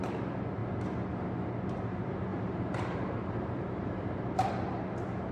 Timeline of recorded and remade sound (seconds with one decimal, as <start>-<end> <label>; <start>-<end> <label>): 0.0-2.3 recorded; 2.3-4.5 remade; 4.5-5.3 recorded